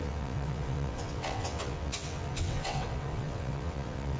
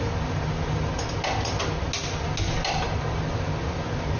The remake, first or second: first